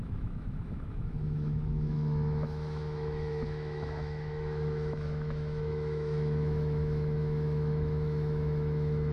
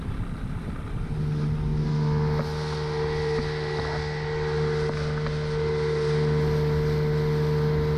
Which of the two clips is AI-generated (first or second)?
first